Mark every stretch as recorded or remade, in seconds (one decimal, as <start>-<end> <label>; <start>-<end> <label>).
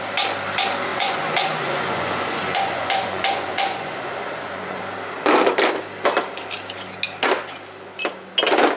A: 0.0-0.9 recorded; 0.9-4.8 remade; 4.8-8.8 recorded